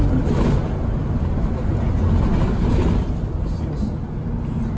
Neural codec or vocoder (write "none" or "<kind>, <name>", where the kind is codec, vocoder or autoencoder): none